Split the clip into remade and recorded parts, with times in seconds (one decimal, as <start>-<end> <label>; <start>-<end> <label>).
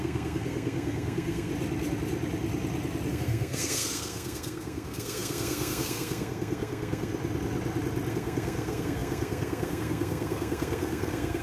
0.0-1.5 remade; 1.5-3.1 recorded; 3.1-7.1 remade; 7.1-8.1 recorded; 8.1-11.4 remade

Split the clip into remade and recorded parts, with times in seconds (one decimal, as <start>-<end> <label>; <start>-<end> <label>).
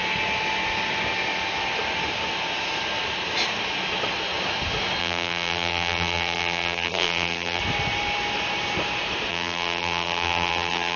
0.0-5.0 recorded; 5.0-7.6 remade; 7.6-9.3 recorded; 9.3-11.0 remade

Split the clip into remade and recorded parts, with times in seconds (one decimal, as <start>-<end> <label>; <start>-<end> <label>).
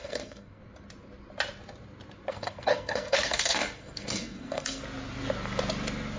0.0-0.6 remade; 0.6-2.3 recorded; 2.3-4.8 remade; 4.8-6.2 recorded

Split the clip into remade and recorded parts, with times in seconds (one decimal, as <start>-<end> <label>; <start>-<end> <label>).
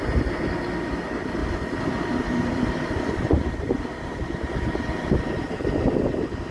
0.0-1.4 recorded; 1.4-5.3 remade; 5.3-6.5 recorded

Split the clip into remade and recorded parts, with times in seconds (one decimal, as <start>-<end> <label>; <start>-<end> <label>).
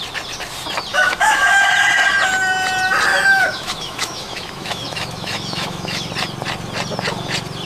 0.0-0.9 recorded; 0.9-1.7 remade; 1.7-3.1 recorded; 3.1-6.1 remade; 6.1-7.7 recorded